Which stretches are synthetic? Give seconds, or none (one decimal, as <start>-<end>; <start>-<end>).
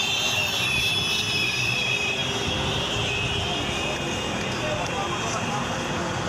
none